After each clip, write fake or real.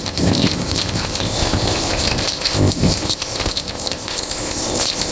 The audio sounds fake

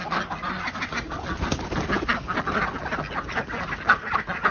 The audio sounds real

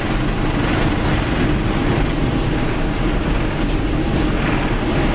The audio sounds real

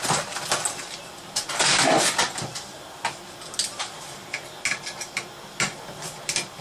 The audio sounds real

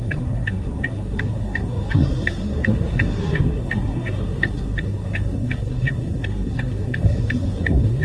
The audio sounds fake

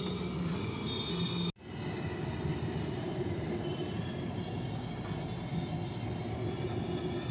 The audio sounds real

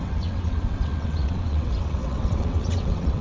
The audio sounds fake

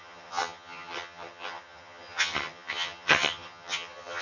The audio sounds fake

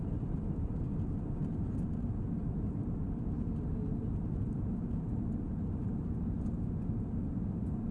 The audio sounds fake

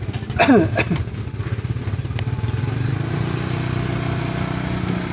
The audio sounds real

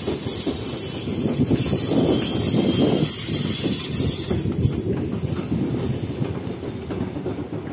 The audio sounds real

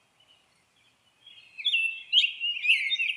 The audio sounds real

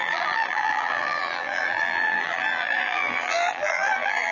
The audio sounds fake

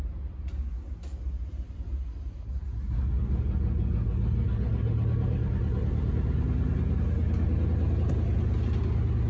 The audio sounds real